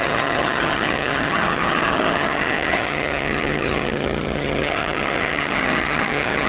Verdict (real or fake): fake